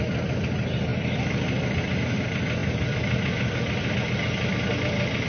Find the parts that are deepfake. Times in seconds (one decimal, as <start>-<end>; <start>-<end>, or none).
none